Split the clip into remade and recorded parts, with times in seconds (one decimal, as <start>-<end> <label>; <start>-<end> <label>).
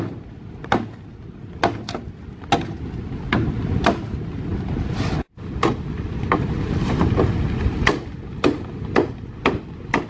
0.0-10.1 recorded